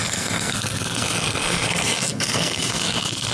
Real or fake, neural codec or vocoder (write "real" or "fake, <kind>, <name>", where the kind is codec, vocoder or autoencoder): fake, codec, SNAC